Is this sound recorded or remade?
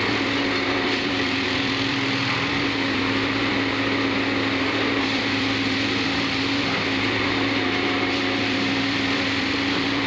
remade